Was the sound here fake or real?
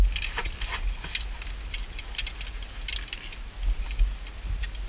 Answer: real